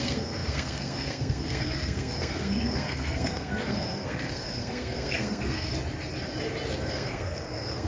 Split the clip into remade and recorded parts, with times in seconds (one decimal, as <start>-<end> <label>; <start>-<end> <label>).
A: 0.0-5.7 remade; 5.7-6.9 recorded; 6.9-7.9 remade